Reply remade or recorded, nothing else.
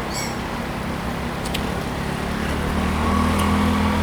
recorded